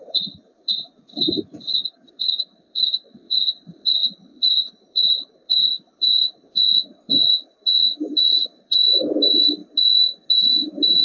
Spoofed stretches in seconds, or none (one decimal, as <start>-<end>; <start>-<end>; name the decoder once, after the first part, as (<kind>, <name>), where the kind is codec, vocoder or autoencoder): 0.0-7.3 (vocoder, BigVGAN v2); 8.1-9.6